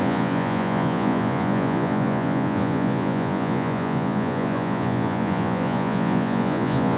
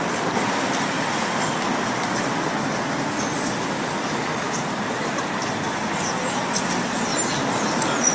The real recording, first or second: second